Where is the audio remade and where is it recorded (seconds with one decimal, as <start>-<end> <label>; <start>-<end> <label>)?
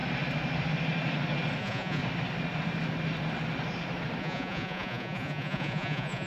0.0-1.6 recorded; 1.6-2.0 remade; 2.0-4.2 recorded; 4.2-6.3 remade